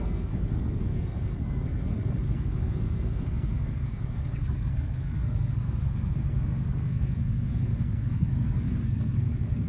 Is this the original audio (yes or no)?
no